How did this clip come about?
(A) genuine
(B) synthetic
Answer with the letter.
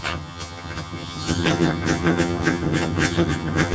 B